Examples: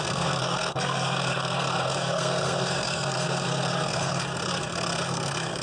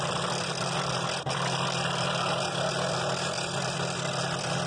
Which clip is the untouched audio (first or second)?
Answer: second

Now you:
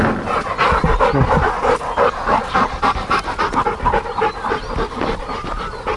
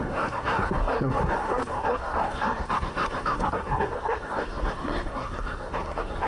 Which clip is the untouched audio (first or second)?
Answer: first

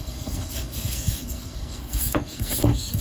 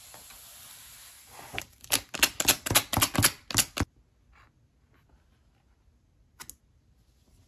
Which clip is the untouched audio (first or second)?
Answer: second